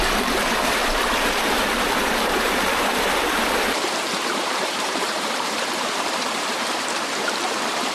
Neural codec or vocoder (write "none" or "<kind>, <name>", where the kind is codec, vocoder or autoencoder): vocoder, BigVGAN v2